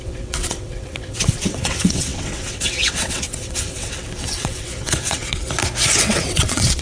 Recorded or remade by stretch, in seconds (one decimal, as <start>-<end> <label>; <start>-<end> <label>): 0.0-5.4 remade; 5.4-6.0 recorded; 6.0-6.8 remade